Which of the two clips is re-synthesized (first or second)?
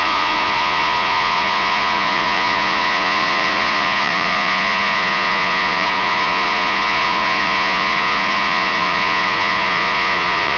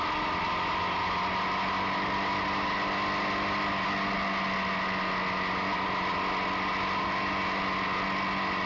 first